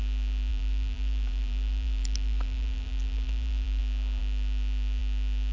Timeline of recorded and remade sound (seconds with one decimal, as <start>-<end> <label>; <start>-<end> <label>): 0.0-0.5 recorded; 0.5-3.8 remade; 3.8-5.5 recorded